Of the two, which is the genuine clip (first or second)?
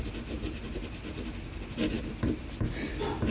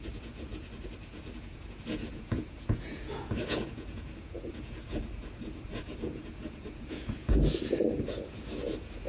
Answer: first